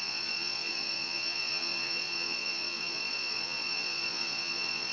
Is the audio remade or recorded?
remade